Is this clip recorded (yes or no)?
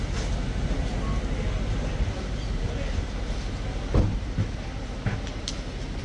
yes